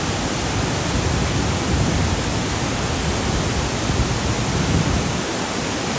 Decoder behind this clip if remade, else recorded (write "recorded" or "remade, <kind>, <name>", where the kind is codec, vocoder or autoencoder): recorded